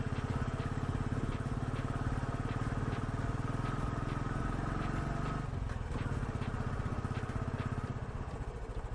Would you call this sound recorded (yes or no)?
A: yes